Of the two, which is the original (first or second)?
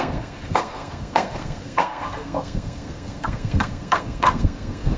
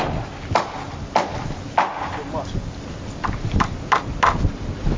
second